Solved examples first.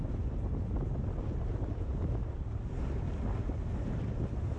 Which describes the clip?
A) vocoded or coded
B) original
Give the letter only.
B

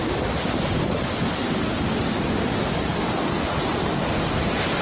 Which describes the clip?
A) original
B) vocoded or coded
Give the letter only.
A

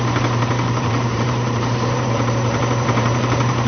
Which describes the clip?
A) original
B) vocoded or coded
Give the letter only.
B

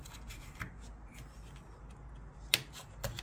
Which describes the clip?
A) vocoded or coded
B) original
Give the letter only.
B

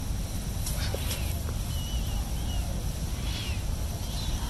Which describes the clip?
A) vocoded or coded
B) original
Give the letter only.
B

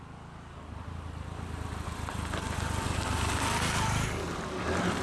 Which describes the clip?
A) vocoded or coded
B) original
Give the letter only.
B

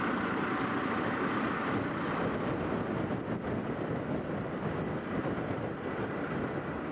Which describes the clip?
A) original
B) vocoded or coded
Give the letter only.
A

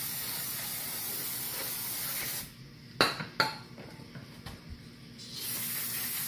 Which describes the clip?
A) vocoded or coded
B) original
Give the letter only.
B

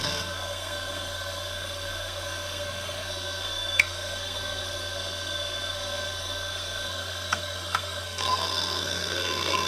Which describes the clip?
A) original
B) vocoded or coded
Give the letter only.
B